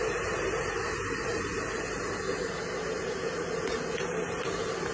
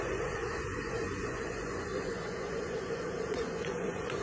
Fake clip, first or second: second